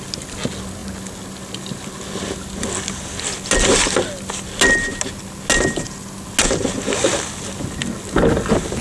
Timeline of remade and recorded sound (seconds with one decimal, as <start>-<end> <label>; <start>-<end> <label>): 0.0-8.8 recorded